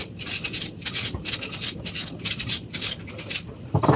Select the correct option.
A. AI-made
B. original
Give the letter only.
B